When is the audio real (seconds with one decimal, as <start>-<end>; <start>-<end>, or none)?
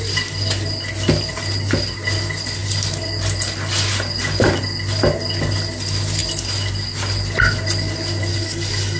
0.0-8.3